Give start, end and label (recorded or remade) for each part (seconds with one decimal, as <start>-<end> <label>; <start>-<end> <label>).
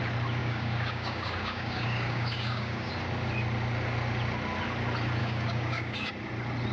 0.0-0.4 recorded; 0.4-2.9 remade; 2.9-5.2 recorded; 5.2-6.1 remade; 6.1-6.7 recorded